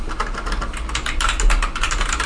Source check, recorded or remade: recorded